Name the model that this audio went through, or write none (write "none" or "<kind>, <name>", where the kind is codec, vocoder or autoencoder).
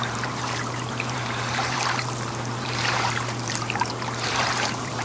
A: vocoder, BigVGAN v2